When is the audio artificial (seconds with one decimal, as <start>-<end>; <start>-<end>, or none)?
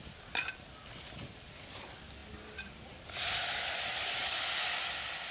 none